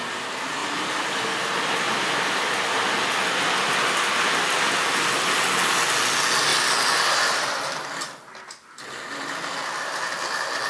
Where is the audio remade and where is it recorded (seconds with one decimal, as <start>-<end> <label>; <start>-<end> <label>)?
0.0-10.7 recorded